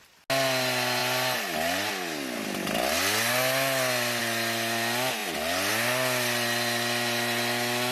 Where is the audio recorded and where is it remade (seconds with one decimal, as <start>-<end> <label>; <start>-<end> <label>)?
0.0-7.9 recorded